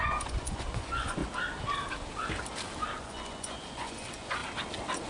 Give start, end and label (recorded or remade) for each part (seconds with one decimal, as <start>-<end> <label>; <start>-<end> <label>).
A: 0.0-1.2 remade; 1.2-3.0 recorded; 3.0-4.4 remade; 4.4-5.1 recorded